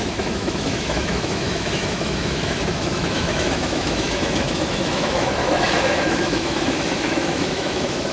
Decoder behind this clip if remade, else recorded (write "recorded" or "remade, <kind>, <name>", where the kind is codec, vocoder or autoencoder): remade, autoencoder, DAC-VAE